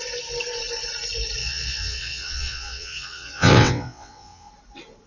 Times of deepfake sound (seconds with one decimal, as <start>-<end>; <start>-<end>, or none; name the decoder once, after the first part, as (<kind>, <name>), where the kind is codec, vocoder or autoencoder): 1.4-4.5 (vocoder, WaveNeXt)